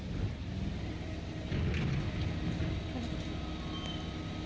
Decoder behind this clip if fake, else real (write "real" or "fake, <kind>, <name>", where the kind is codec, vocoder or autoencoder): real